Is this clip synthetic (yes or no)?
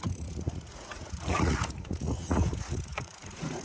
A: yes